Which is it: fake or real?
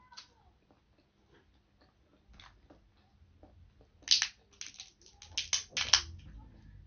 real